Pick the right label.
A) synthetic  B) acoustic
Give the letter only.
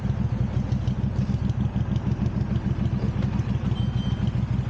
B